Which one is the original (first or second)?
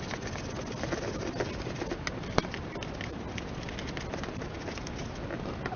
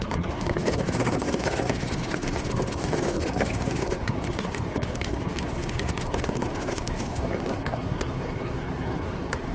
first